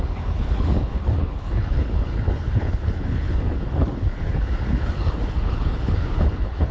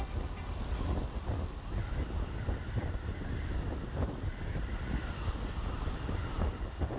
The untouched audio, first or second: second